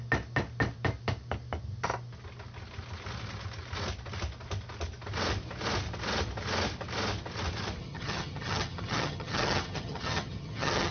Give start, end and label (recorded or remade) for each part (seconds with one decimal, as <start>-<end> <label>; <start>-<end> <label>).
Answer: 0.0-7.8 recorded; 7.8-10.9 remade